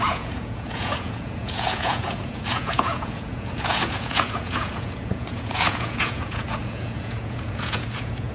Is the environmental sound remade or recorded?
remade